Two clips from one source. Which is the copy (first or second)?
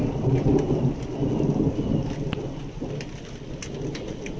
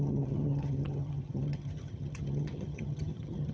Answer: second